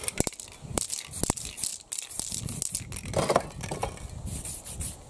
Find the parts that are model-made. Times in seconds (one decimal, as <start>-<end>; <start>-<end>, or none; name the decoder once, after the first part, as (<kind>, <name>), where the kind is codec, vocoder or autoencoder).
none